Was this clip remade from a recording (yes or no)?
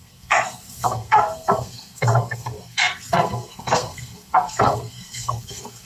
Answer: yes